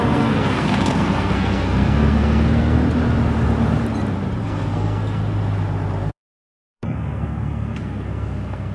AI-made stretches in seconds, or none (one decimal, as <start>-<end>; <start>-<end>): 0.0-2.8; 4.4-5.2; 6.1-8.7